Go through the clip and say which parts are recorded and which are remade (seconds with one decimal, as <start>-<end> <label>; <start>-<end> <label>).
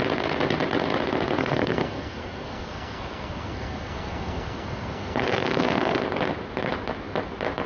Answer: 0.0-1.4 recorded; 1.4-6.0 remade; 6.0-7.7 recorded